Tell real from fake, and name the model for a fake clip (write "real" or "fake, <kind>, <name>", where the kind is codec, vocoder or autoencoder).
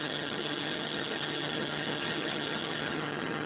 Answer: fake, vocoder, HiFi-GAN